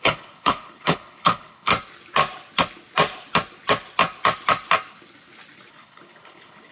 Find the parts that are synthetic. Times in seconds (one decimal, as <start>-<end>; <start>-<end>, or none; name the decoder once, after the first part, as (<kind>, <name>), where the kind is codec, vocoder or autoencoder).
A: 0.0-1.7 (codec, HILCodec); 5.7-6.7

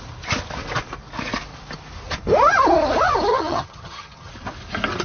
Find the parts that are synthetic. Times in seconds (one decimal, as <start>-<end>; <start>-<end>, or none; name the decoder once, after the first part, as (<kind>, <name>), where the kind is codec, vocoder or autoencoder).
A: 3.3-4.3 (vocoder, HiFi-GAN)

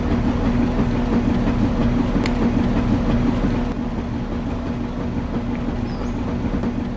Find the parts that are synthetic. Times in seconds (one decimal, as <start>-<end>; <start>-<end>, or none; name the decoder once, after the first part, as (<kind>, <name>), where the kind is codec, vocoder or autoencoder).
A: none

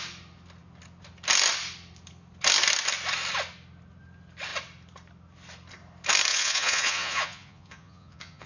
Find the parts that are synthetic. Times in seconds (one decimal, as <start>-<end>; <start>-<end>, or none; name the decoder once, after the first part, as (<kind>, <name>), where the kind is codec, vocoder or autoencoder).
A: 6.3-8.5 (vocoder, Vocos)

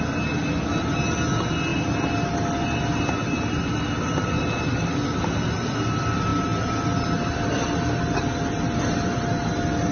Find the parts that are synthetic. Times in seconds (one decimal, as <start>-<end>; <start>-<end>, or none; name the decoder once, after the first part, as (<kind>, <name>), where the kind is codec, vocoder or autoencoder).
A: none

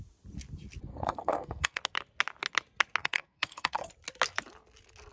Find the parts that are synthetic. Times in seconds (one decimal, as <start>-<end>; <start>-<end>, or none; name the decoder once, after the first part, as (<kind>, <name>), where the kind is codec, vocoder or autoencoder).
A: 0.9-1.8 (codec, SNAC); 3.0-3.9

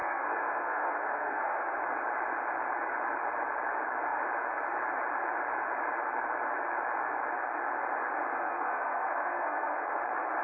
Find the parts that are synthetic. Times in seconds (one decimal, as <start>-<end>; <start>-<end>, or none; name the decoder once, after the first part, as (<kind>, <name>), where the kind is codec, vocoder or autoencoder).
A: 0.0-1.8 (codec, SNAC); 8.3-10.0